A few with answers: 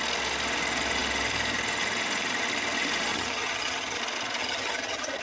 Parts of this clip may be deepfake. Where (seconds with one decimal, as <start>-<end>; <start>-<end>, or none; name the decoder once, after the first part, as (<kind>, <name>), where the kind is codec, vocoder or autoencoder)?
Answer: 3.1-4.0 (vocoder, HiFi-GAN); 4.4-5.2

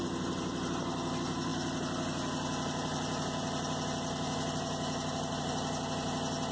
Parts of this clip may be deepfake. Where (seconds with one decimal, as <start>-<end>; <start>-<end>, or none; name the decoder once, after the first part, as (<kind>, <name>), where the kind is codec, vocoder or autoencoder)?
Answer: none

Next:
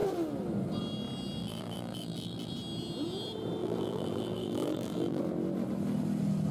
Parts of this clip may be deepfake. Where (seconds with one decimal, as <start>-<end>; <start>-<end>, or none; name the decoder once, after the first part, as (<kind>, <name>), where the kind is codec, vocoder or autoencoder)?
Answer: 1.4-2.5 (vocoder, BigVGAN v2); 3.6-5.2

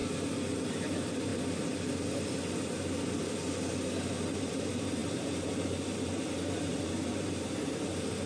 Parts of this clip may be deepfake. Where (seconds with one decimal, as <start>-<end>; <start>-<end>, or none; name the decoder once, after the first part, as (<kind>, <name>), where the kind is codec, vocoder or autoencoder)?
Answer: 0.7-1.3 (vocoder, BigVGAN v2); 4.4-8.3

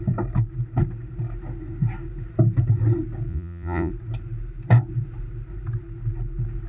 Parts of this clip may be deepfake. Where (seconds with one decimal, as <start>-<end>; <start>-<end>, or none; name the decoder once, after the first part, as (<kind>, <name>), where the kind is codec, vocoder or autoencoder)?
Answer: 3.3-3.9 (vocoder, Vocos)

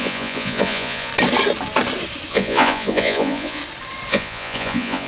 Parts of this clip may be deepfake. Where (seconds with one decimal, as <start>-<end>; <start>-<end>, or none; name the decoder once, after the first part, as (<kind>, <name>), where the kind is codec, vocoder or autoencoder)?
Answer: 0.0-1.1 (vocoder, Vocos); 2.3-3.6; 4.1-5.1

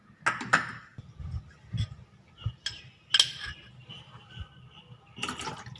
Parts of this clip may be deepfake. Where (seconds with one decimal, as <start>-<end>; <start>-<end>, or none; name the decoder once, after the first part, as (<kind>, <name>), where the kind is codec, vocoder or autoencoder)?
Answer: 0.9-2.6 (vocoder, BigVGAN v2); 3.8-5.8